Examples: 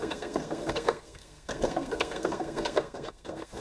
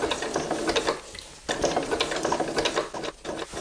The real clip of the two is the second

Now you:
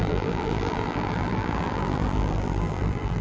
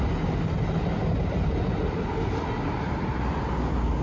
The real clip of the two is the second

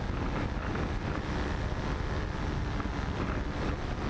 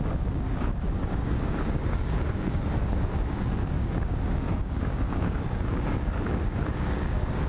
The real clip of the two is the first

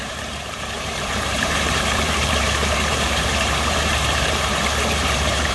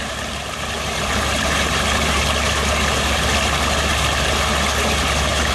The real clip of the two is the second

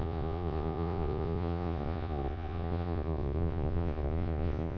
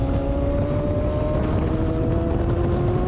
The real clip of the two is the second